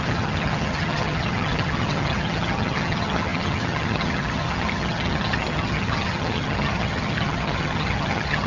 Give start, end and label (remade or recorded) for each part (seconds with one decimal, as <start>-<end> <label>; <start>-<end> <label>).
0.0-8.5 remade